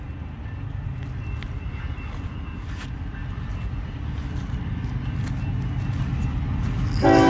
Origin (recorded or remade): recorded